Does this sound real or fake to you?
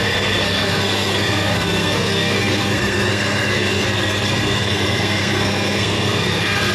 fake